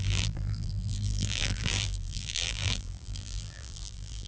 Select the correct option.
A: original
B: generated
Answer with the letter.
B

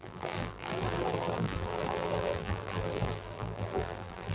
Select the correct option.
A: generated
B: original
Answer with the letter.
A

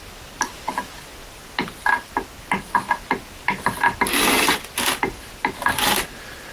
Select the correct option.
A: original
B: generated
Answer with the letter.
A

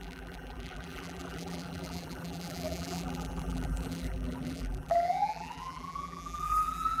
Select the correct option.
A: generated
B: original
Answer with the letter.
A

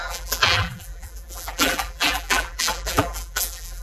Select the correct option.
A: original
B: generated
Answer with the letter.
B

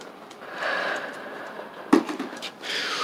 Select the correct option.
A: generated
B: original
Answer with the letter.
A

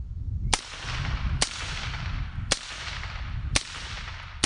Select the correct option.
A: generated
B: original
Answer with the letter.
A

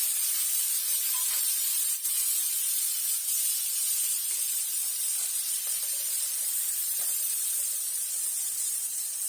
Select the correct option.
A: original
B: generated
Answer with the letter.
B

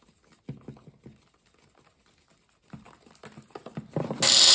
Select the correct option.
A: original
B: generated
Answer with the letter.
A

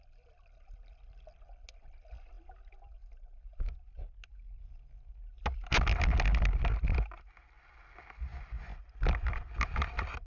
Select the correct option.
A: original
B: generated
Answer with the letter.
A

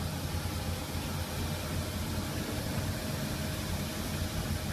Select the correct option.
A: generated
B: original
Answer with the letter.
B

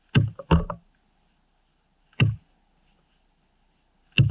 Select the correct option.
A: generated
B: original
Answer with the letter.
B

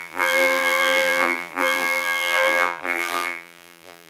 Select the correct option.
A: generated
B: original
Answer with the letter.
A